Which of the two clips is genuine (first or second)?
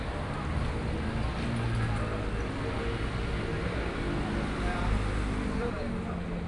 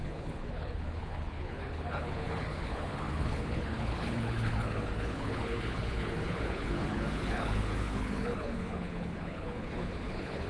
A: first